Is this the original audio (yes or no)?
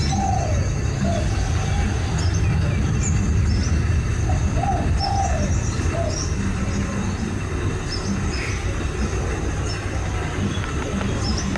yes